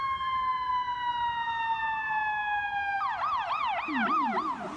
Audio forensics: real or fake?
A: real